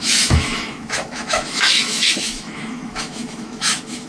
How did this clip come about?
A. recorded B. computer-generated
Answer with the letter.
B